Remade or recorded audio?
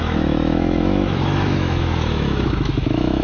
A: remade